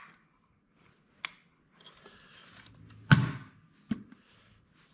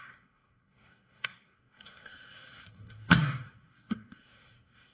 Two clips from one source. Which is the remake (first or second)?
second